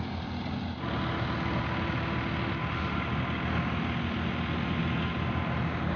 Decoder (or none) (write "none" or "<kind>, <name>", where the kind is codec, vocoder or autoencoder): none